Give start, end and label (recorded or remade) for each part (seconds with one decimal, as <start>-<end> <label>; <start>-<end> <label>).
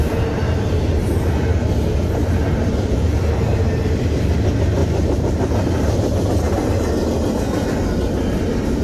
0.0-4.8 recorded; 4.8-5.8 remade; 5.8-8.8 recorded